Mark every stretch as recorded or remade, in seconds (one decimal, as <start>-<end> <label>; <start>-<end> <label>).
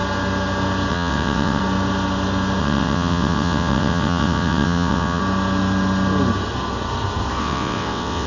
0.0-0.9 recorded; 0.9-1.6 remade; 1.6-2.6 recorded; 2.6-5.2 remade; 5.2-7.4 recorded; 7.4-8.3 remade